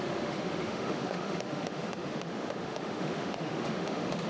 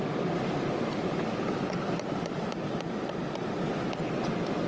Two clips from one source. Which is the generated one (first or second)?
first